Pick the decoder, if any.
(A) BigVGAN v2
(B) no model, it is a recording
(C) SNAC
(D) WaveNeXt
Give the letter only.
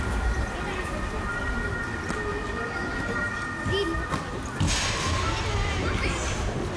B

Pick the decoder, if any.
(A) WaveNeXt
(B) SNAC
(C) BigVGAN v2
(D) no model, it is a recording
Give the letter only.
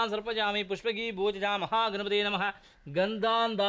D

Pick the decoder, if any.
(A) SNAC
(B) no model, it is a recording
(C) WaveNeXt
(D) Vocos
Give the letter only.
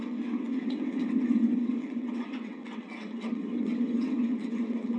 C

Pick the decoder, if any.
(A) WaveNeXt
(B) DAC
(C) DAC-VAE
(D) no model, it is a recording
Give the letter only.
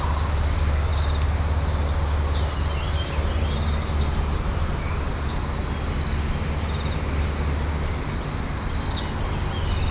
D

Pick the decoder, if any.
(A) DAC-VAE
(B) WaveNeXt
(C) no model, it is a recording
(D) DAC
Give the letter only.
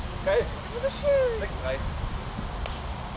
C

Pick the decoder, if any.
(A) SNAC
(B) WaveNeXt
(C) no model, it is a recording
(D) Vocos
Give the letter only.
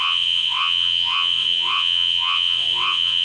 B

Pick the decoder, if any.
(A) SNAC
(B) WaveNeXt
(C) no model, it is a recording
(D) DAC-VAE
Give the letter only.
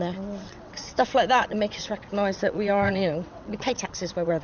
B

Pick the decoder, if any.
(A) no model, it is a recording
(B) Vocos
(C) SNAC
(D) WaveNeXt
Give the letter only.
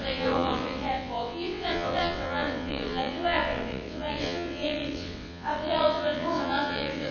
D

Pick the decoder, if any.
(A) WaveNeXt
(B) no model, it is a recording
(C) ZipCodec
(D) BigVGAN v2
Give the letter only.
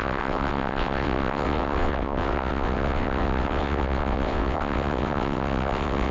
A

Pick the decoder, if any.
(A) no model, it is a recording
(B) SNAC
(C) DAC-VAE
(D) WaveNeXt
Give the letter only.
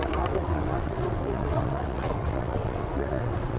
D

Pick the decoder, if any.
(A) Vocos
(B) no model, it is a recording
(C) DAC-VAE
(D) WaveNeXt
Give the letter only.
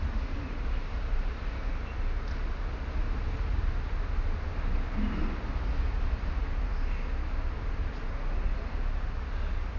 B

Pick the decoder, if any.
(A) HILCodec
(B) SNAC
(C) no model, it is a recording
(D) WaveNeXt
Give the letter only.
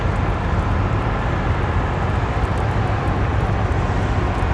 C